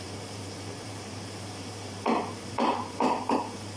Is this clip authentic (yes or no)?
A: no